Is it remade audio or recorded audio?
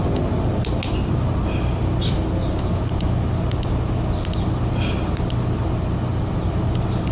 recorded